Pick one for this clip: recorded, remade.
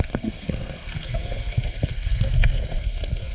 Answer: remade